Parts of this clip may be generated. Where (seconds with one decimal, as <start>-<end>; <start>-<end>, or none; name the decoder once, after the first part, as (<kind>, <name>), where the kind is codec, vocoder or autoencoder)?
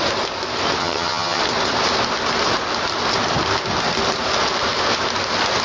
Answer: 0.8-1.4 (vocoder, HiFi-GAN)